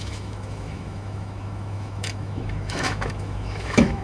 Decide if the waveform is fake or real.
fake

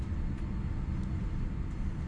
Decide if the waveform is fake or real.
real